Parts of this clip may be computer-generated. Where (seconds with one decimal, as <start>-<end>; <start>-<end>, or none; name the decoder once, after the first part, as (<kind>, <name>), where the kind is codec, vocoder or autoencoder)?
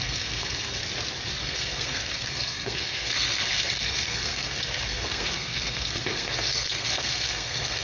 0.0-0.8 (codec, SNAC); 1.4-7.8